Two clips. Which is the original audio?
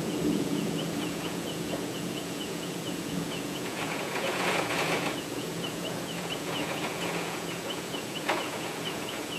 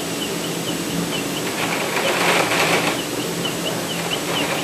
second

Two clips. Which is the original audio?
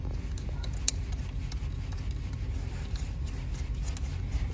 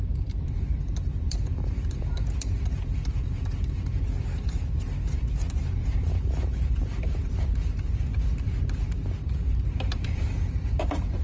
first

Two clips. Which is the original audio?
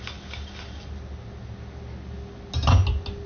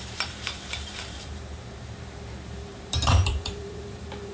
first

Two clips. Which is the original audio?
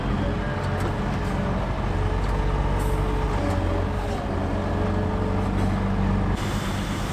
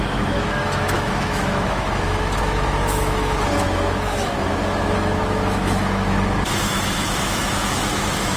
first